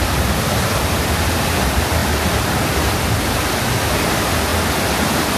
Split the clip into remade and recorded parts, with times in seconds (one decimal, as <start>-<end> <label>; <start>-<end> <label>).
0.0-4.5 remade; 4.5-5.4 recorded